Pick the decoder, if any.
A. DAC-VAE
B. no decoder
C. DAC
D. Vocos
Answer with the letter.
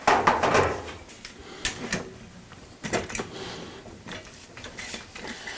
B